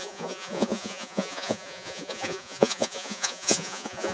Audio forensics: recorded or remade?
remade